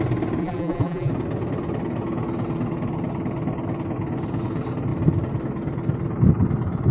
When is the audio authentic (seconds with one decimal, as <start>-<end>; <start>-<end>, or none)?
0.0-0.4; 1.1-6.9